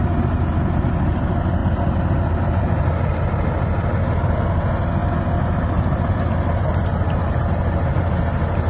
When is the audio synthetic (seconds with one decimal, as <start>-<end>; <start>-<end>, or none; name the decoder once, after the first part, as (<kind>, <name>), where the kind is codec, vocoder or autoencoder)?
none